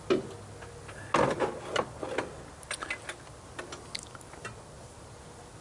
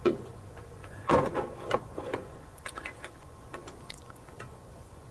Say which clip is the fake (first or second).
second